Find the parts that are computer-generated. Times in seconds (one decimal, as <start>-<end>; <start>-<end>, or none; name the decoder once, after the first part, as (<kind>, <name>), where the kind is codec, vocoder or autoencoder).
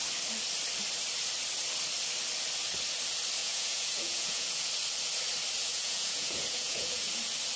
3.4-4.7 (vocoder, Vocos); 5.6-7.1